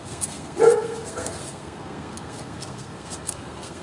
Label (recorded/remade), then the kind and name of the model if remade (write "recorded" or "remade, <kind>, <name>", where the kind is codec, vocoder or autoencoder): remade, codec, SNAC